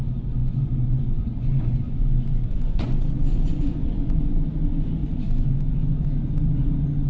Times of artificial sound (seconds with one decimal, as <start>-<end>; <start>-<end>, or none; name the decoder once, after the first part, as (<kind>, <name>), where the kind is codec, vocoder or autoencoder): 0.4-4.2 (vocoder, Vocos); 5.0-5.5